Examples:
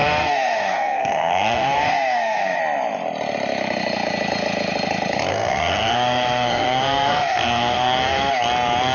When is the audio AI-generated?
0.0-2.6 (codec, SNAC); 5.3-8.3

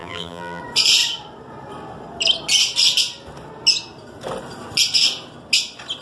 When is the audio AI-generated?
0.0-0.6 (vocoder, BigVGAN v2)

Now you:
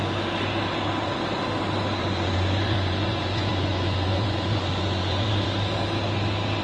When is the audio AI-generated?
2.0-5.5 (vocoder, Vocos)

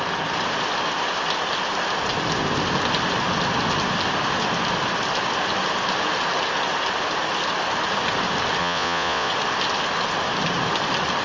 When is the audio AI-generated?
8.6-9.3 (vocoder, Vocos)